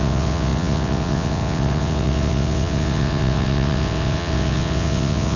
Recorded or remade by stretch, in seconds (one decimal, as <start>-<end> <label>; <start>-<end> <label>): 0.0-5.4 remade